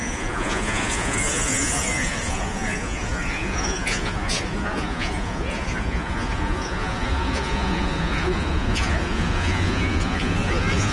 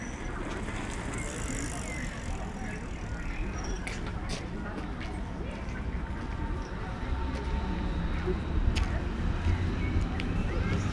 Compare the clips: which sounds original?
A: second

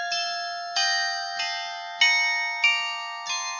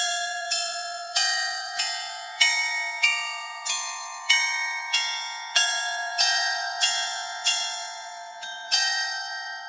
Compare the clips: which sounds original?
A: first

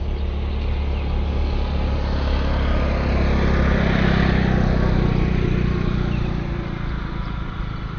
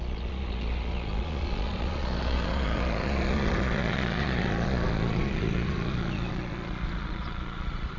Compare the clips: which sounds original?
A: first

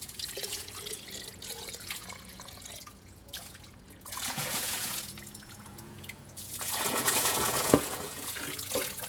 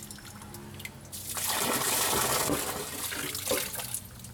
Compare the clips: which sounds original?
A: second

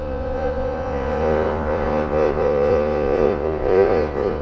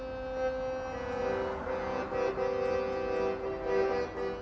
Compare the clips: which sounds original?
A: second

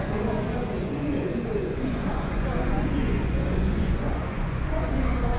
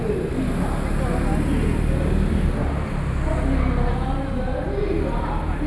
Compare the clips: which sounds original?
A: second